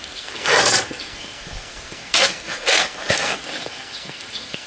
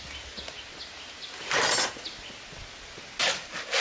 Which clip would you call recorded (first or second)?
second